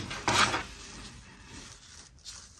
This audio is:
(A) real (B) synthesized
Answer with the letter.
A